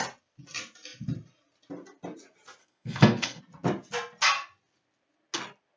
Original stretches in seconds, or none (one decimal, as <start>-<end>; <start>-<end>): 0.0-2.6; 3.4-5.8